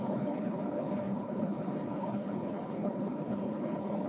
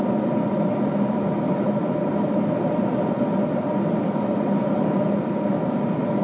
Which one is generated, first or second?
first